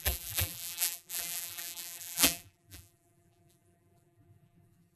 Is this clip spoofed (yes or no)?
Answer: yes